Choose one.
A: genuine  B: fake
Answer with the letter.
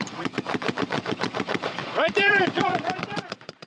B